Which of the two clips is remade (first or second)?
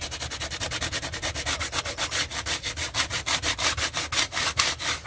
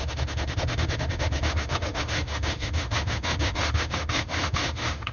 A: second